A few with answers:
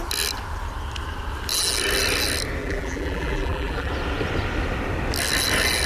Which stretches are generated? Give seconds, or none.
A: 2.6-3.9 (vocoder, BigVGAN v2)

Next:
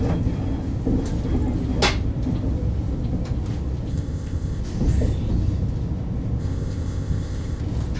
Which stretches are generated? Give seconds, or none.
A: 3.9-4.6 (codec, ZipCodec); 6.4-7.6

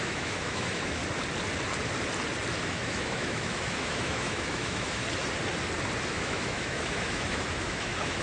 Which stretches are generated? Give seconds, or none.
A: 0.0-1.0 (autoencoder, DAC-VAE); 2.6-5.0; 6.1-8.2

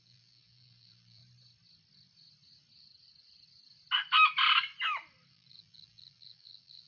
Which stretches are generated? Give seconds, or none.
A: 0.0-1.2 (vocoder, BigVGAN v2); 5.3-6.9

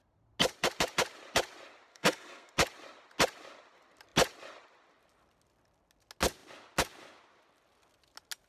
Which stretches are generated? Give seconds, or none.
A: 1.9-2.5 (codec, SNAC)